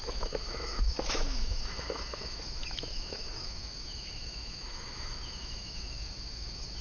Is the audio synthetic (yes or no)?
yes